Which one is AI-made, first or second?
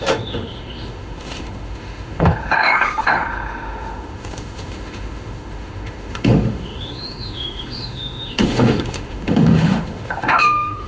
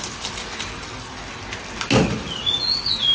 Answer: first